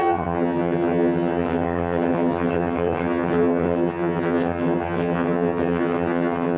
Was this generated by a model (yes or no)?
yes